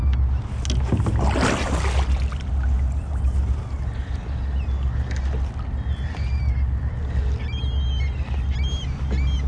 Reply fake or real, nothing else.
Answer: real